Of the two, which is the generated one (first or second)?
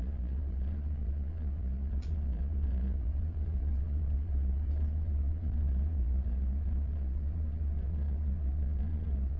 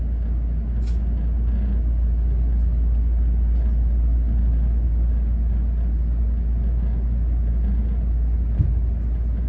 first